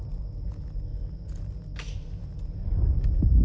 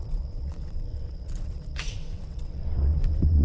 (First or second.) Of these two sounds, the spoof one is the second